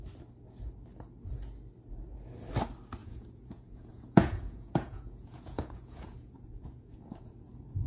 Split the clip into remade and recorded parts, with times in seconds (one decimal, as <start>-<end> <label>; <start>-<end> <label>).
0.0-3.0 recorded; 3.0-7.5 remade; 7.5-7.9 recorded